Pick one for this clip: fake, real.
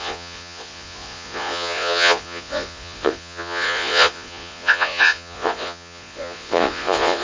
fake